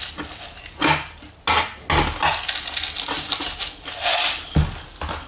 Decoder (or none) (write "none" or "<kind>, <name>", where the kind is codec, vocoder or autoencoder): none